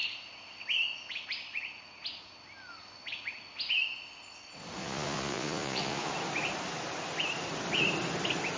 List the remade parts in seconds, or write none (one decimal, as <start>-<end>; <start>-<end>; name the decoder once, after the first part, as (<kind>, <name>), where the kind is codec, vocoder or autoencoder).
4.8-6.1 (vocoder, Vocos)

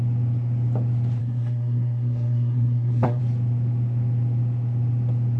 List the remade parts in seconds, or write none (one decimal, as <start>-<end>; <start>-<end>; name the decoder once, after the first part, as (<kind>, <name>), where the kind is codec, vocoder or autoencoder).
1.2-3.2 (codec, SNAC)

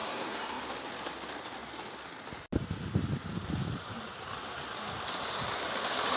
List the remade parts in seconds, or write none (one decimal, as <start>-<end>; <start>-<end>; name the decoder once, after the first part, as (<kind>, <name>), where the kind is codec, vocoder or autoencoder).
0.0-0.6 (codec, SNAC)

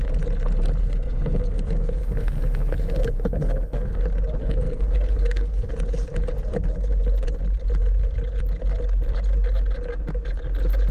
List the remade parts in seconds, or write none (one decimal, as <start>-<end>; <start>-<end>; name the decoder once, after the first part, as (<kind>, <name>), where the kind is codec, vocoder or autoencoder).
0.8-4.0 (codec, SNAC); 4.4-5.7

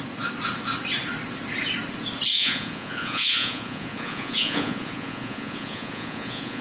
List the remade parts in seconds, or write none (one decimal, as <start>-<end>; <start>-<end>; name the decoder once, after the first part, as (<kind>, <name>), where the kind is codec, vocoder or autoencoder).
2.3-6.6 (vocoder, Vocos)

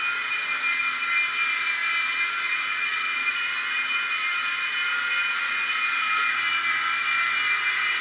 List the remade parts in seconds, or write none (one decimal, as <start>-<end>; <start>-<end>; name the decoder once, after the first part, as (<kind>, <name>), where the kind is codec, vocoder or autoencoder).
none